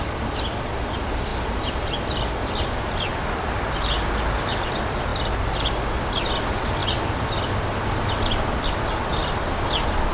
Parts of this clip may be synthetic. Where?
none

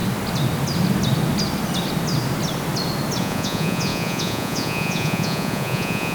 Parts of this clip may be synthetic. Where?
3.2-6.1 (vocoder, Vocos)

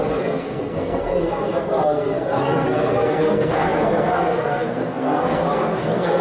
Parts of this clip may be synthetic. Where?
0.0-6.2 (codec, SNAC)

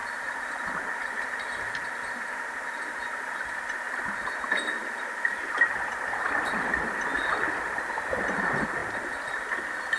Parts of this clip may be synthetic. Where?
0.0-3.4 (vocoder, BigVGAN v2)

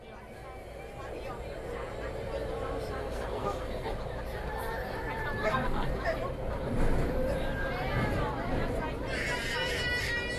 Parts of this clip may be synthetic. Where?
3.0-3.9 (codec, SNAC); 5.4-5.9